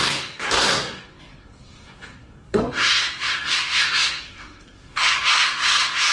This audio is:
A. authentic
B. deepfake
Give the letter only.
B